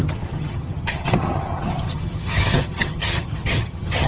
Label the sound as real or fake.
fake